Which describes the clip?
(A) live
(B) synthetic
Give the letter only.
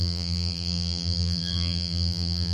B